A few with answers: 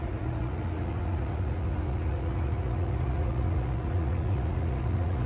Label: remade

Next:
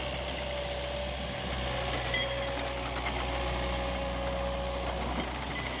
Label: recorded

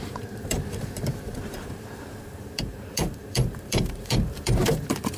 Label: remade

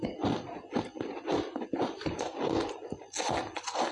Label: recorded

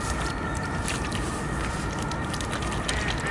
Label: recorded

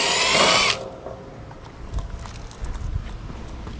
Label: recorded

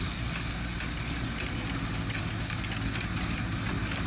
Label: recorded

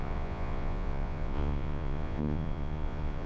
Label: remade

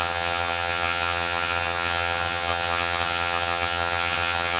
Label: remade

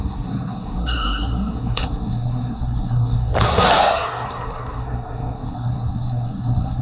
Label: remade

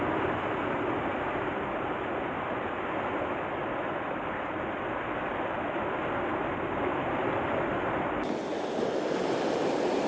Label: recorded